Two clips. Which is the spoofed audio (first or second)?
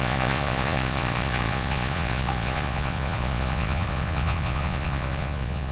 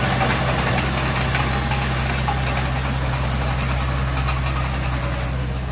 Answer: first